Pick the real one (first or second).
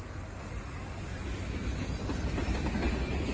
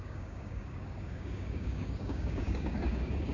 first